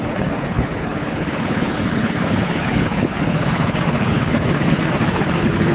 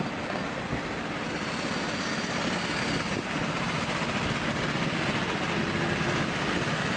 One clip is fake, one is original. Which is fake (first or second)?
first